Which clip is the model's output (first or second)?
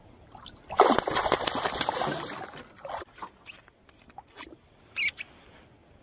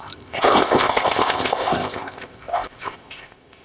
second